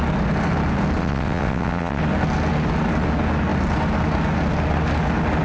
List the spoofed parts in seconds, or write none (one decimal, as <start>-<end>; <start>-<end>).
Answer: 1.0-2.0